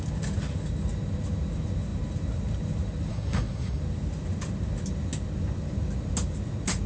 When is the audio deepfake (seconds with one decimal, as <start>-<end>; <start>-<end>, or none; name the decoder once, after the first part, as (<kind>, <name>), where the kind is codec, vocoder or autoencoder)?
3.1-3.8 (codec, SNAC)